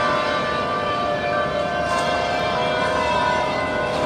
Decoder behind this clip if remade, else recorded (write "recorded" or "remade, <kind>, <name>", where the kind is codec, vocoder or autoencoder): remade, vocoder, BigVGAN v2